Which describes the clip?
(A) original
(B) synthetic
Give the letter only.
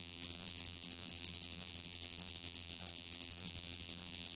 B